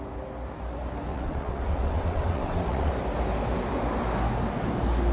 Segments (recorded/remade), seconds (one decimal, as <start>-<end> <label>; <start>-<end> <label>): 0.0-1.1 recorded; 1.1-2.9 remade; 2.9-5.1 recorded